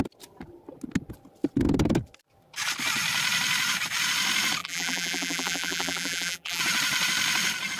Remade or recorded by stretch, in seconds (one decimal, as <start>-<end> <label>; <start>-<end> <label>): 0.0-4.6 recorded; 4.6-6.6 remade; 6.6-7.8 recorded